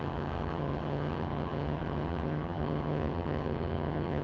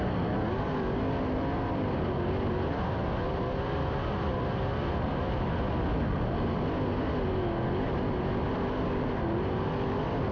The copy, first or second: first